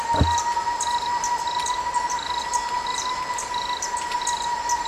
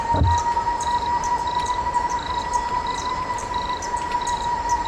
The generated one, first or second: second